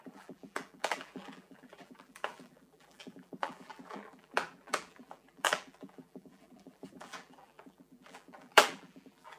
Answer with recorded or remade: remade